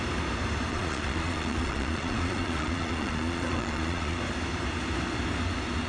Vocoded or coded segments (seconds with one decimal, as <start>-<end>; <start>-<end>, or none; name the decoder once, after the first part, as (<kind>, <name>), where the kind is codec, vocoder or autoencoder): 0.7-4.2 (vocoder, Vocos)